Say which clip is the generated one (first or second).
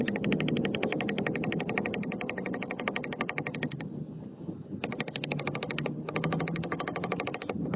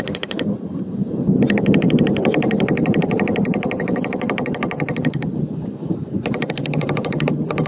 second